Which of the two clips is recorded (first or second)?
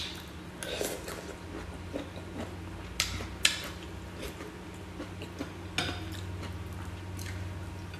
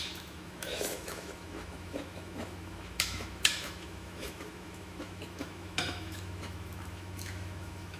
first